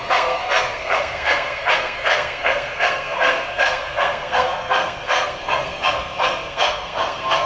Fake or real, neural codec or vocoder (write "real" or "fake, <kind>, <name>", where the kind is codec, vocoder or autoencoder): fake, codec, SNAC